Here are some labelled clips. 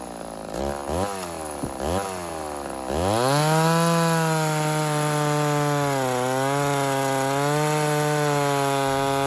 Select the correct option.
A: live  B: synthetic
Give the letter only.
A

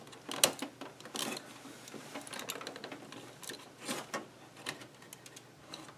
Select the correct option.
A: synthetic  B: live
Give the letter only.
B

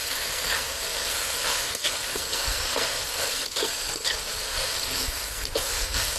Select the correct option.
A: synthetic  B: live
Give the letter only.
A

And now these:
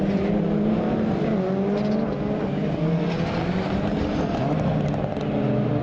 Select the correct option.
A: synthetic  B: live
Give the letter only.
B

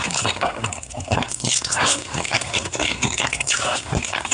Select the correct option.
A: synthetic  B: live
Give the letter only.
A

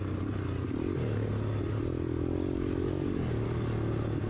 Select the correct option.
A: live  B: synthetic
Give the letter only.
A